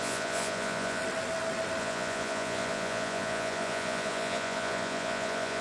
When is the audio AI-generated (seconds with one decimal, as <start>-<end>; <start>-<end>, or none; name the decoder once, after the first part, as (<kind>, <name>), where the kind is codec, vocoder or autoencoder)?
0.0-1.0 (vocoder, Vocos); 1.8-5.6